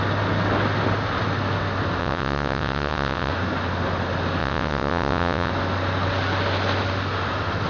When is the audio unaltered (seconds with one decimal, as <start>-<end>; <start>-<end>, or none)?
0.0-2.0; 3.3-4.4; 5.5-7.7